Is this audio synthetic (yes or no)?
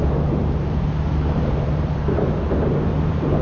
yes